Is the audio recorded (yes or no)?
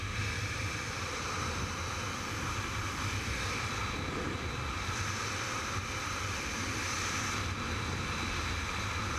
yes